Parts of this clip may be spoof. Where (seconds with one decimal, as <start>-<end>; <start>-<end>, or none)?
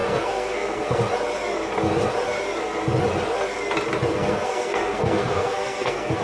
0.0-1.0; 4.1-6.2